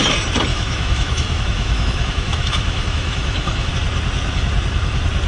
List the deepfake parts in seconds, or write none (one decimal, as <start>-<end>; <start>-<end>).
0.5-3.7